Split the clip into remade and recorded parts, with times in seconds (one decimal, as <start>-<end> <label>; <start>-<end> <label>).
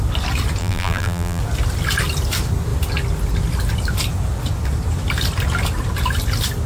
0.0-0.6 recorded; 0.6-1.4 remade; 1.4-6.7 recorded